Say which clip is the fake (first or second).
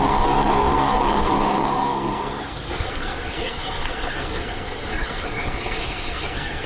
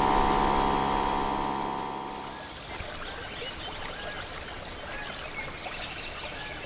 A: first